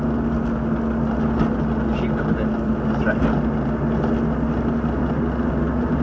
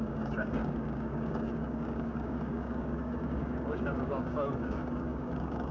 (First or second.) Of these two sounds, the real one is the first